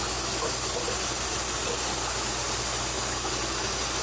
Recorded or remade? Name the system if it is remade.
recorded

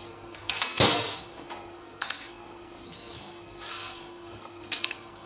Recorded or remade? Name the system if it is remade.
remade, codec, SNAC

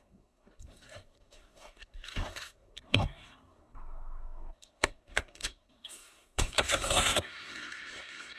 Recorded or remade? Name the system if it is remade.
remade, codec, SNAC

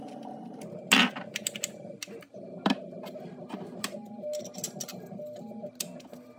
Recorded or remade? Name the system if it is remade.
recorded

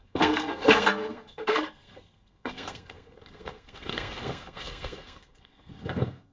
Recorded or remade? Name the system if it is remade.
remade, codec, SNAC